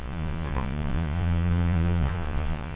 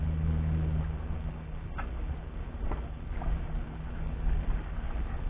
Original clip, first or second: second